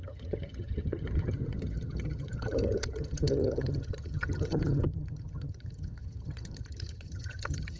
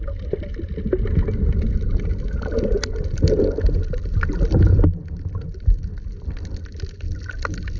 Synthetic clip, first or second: first